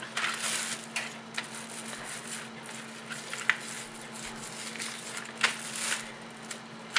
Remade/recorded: recorded